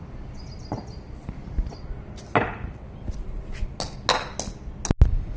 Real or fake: real